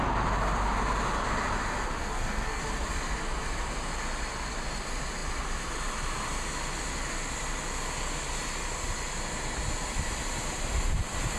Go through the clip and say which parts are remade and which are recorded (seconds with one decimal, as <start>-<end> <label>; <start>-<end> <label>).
0.0-2.0 recorded; 2.0-2.6 remade; 2.6-11.4 recorded